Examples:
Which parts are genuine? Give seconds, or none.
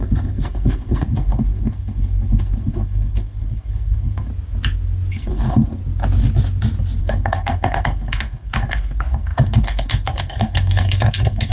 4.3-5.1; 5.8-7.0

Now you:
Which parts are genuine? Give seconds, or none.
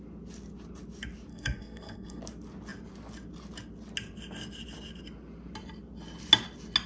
0.0-1.3; 2.2-6.9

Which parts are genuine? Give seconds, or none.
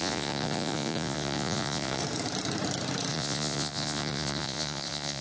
2.0-3.1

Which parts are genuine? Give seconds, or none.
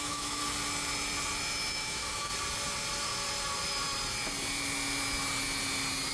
0.4-1.7; 2.3-6.1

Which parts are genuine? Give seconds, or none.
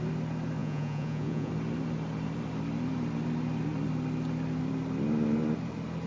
0.0-0.6; 1.5-6.1